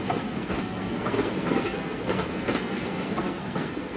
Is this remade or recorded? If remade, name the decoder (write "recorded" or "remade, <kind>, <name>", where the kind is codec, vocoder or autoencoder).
remade, codec, SNAC